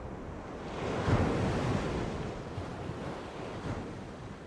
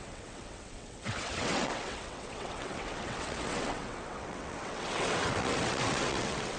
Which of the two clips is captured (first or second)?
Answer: first